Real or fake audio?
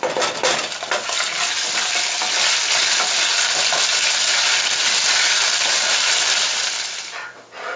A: real